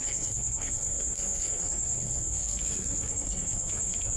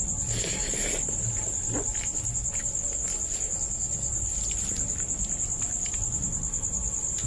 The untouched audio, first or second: second